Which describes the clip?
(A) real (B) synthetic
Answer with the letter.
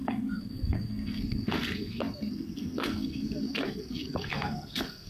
B